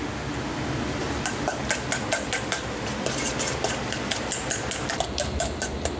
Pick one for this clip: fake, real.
real